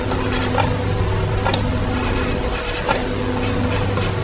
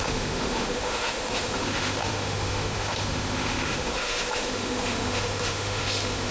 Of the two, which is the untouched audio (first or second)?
first